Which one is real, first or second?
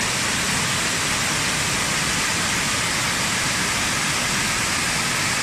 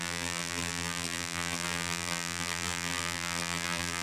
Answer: first